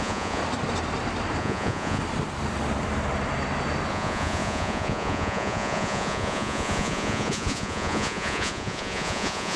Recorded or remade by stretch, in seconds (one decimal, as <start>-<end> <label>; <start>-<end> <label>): 0.0-0.4 remade; 0.4-1.4 recorded; 1.4-2.0 remade; 2.0-3.9 recorded; 3.9-9.6 remade